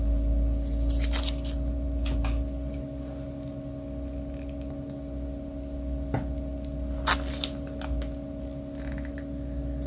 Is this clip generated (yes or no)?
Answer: no